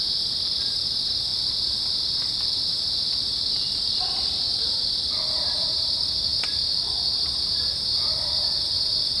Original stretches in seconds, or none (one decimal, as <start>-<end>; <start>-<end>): 6.3-8.0